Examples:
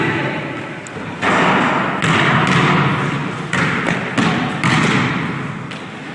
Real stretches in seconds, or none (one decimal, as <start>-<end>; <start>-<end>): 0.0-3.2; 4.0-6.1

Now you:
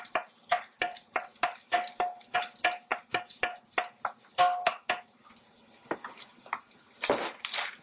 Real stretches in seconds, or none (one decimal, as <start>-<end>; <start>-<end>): 0.0-7.8

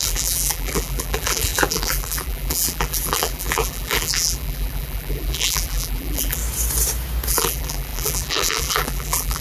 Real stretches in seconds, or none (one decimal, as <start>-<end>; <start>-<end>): 6.4-7.3

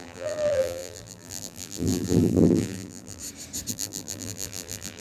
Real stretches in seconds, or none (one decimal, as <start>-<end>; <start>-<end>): 3.2-3.7